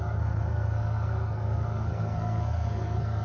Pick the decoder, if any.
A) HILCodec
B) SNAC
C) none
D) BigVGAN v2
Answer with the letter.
B